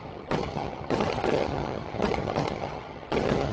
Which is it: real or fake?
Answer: fake